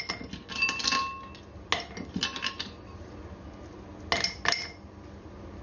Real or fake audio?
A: real